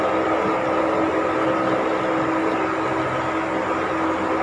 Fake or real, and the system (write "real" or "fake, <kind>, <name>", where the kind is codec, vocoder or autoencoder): real